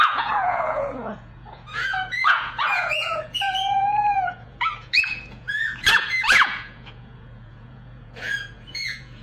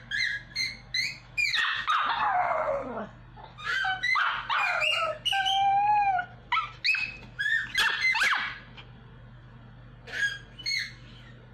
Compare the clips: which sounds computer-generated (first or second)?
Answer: first